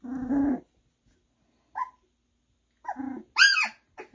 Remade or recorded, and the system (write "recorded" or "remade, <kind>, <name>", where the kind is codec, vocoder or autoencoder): recorded